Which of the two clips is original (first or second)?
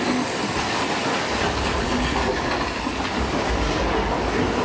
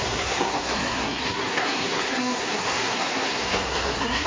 first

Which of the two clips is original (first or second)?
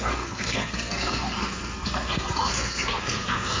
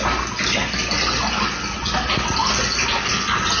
second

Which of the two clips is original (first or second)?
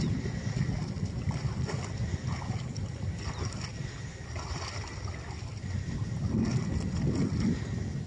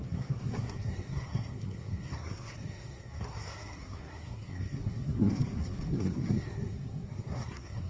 first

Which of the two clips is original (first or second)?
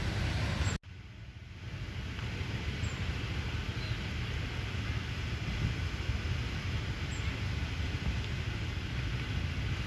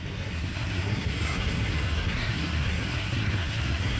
first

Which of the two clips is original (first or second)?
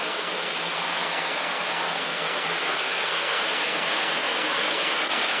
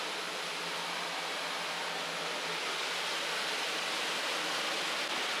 second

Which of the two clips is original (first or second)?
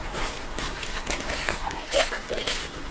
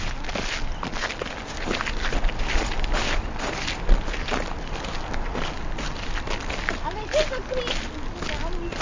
second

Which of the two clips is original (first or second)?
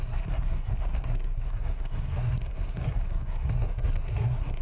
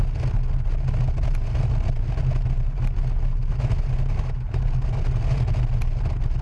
second